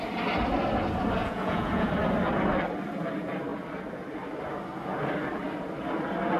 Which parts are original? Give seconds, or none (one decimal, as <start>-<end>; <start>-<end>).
0.0-1.2; 1.9-6.4